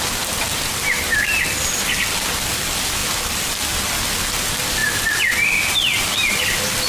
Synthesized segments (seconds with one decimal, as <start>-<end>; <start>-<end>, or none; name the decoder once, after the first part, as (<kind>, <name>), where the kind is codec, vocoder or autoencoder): none